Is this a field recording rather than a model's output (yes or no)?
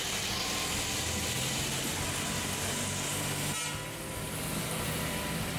yes